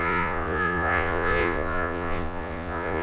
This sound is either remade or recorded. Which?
remade